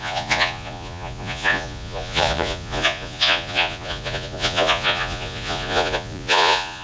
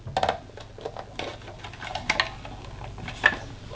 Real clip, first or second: second